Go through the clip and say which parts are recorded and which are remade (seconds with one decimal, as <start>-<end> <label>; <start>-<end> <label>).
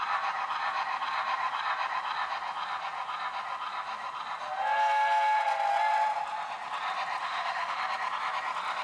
0.0-7.2 recorded; 7.2-7.8 remade; 7.8-8.8 recorded